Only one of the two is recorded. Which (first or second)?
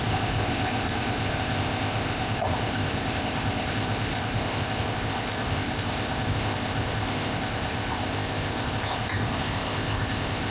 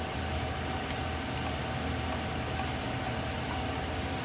second